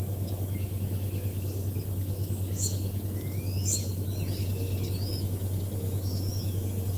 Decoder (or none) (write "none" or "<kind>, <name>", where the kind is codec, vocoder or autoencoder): autoencoder, DAC-VAE